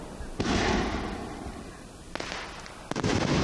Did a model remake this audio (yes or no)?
no